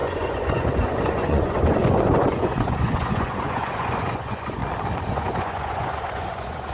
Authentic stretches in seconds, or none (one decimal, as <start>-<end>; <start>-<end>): 4.6-5.1